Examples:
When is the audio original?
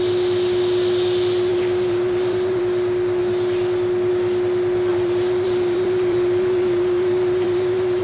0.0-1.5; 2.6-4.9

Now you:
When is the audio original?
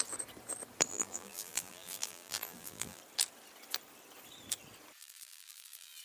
0.0-0.9; 3.0-5.0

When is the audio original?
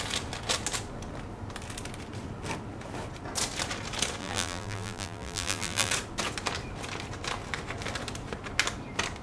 0.0-4.2; 5.9-9.2